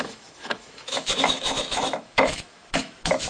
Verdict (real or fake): fake